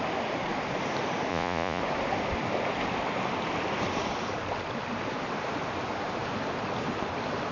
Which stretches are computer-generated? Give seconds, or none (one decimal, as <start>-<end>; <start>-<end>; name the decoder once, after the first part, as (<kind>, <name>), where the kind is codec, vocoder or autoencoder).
1.3-1.8 (vocoder, Vocos)